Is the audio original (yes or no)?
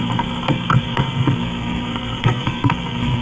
no